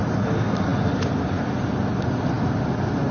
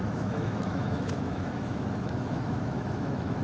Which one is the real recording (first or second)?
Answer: first